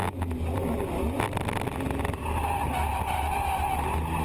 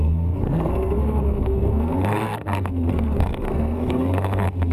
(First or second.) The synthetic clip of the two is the second